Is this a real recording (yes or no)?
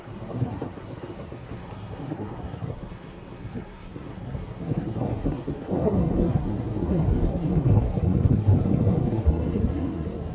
no